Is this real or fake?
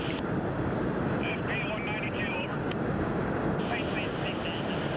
real